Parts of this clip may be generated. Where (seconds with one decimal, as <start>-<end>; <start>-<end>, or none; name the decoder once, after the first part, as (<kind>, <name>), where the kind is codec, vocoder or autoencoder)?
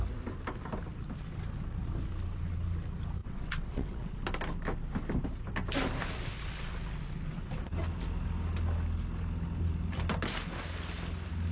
3.2-4.2 (vocoder, WaveNeXt)